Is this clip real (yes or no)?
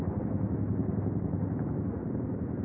yes